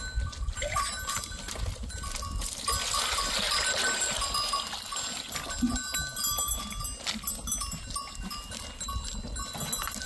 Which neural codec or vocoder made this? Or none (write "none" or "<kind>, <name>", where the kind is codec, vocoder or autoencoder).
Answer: none